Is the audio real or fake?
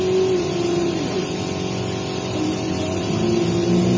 real